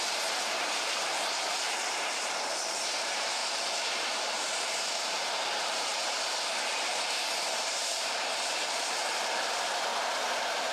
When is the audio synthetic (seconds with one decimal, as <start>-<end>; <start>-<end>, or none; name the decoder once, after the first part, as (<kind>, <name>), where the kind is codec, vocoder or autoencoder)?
0.0-10.7 (vocoder, BigVGAN v2)

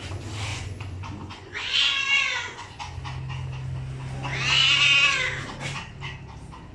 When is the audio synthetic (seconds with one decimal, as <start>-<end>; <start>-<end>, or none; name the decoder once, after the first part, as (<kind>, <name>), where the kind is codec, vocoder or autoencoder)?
0.5-2.8 (vocoder, Vocos)

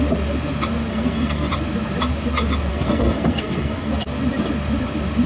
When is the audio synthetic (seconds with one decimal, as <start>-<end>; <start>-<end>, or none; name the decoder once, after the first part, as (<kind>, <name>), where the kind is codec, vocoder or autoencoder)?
0.9-1.5 (codec, SNAC); 2.7-3.9

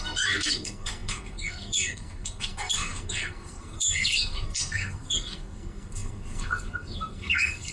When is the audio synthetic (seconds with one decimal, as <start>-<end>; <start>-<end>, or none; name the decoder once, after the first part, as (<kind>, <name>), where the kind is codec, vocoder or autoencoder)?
0.0-7.7 (codec, SNAC)

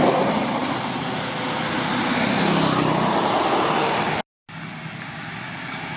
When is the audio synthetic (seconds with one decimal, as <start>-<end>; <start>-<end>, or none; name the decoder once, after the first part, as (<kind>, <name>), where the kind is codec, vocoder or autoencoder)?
none